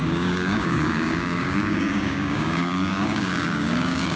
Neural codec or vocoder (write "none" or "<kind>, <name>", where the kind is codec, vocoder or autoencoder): codec, DAC